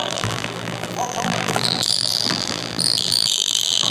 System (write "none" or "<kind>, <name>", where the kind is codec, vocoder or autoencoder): vocoder, BigVGAN v2